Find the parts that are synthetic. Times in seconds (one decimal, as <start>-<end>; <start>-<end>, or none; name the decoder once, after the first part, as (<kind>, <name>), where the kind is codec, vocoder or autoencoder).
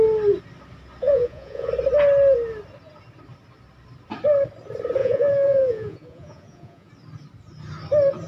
1.0-1.7 (vocoder, Vocos); 5.0-6.9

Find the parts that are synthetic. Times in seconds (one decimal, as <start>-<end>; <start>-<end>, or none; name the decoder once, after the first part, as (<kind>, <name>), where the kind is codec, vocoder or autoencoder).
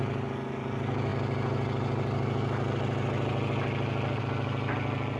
none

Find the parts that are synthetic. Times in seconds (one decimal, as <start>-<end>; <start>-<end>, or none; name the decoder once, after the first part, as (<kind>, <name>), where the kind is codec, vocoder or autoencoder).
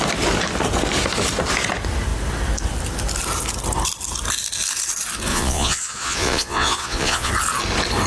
5.3-7.3 (vocoder, Vocos)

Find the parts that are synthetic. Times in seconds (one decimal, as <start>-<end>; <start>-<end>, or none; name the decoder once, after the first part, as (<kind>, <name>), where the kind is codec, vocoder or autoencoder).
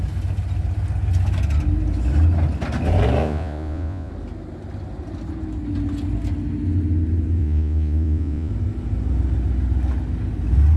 3.2-4.1 (vocoder, Vocos); 7.4-8.5